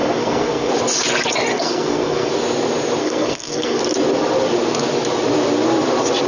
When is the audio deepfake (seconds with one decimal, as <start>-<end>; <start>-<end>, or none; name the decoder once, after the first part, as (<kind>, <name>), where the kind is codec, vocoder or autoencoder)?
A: 0.0-0.7 (codec, SNAC); 1.5-2.3; 3.0-3.8